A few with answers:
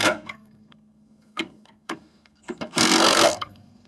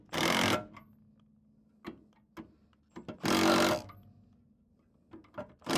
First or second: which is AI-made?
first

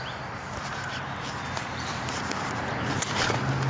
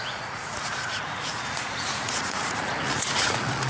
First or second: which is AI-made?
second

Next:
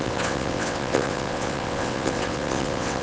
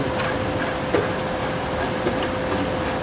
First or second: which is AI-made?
first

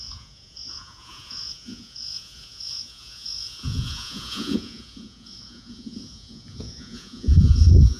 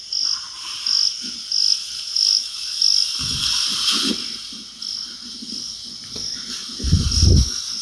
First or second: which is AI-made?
first